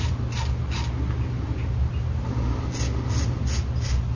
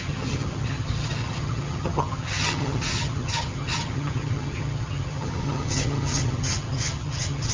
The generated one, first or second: second